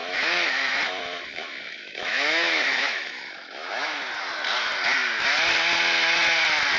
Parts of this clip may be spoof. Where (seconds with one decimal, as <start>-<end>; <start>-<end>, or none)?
0.0-4.1